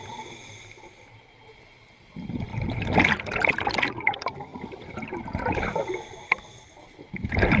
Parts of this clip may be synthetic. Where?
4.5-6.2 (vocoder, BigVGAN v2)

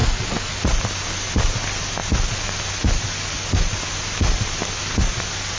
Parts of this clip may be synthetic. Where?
0.0-0.6 (vocoder, BigVGAN v2)

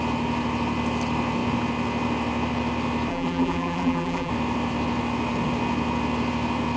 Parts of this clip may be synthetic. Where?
3.1-4.3 (vocoder, BigVGAN v2)

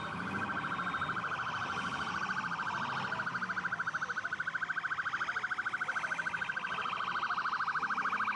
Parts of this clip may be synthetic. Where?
1.7-2.2 (vocoder, BigVGAN v2)

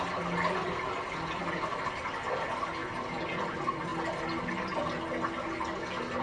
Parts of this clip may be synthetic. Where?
none

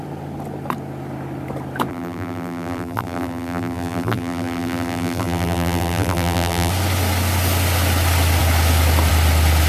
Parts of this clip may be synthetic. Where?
1.9-6.7 (vocoder, BigVGAN v2)

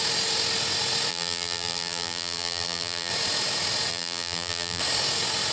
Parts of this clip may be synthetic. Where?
1.1-3.1 (vocoder, BigVGAN v2); 3.9-4.8

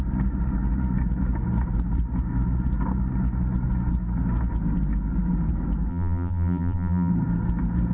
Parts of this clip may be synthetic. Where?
5.9-7.1 (vocoder, BigVGAN v2)